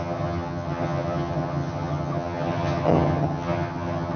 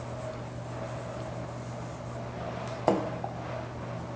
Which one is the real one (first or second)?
second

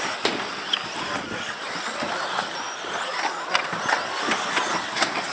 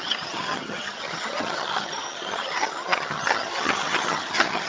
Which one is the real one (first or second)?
first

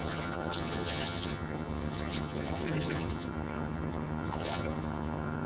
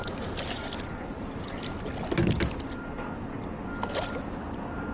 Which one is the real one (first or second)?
second